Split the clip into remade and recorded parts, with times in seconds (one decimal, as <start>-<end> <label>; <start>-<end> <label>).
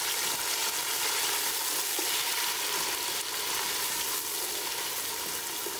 0.0-5.8 recorded